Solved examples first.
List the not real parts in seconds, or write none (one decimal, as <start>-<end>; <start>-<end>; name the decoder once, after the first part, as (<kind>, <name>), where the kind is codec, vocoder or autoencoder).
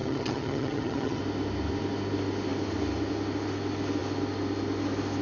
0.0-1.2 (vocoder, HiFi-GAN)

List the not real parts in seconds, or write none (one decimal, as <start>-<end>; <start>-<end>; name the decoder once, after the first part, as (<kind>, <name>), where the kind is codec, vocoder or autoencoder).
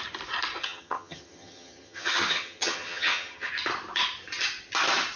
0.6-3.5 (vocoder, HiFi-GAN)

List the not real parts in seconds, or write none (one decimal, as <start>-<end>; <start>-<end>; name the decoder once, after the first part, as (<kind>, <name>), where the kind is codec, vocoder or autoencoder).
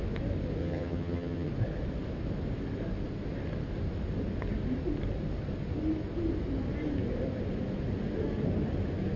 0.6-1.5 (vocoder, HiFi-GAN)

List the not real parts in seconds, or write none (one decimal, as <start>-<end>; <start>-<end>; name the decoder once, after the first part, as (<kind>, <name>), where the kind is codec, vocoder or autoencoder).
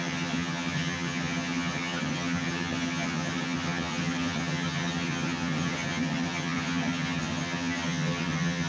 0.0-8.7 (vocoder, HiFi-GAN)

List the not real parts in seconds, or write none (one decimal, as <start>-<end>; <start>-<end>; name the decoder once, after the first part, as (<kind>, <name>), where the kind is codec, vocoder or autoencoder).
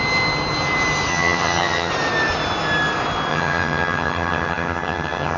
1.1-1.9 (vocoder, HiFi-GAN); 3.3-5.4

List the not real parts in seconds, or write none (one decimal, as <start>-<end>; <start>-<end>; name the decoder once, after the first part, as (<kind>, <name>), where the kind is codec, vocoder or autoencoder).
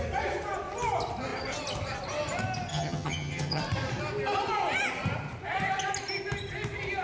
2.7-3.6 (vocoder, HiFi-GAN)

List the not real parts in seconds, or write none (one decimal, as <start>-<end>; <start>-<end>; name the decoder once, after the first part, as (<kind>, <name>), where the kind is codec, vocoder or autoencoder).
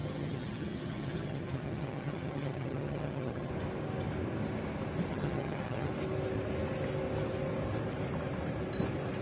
0.0-3.5 (vocoder, HiFi-GAN); 5.1-5.9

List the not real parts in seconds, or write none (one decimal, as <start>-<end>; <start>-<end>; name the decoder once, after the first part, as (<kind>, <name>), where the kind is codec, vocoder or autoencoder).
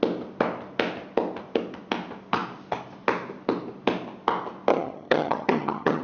4.7-6.0 (vocoder, HiFi-GAN)